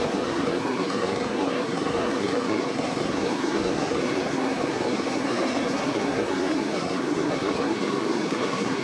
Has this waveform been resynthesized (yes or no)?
yes